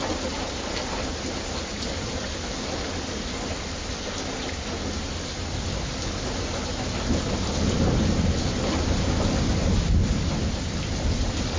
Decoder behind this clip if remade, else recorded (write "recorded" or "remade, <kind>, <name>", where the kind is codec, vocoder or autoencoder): recorded